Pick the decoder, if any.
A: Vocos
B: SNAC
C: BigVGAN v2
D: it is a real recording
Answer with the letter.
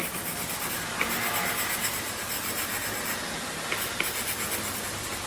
D